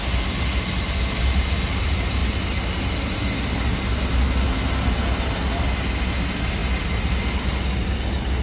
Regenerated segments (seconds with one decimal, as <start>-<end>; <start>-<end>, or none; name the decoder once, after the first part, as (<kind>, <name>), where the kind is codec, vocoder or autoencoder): none